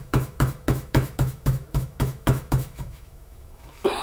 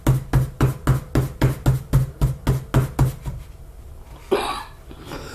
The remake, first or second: first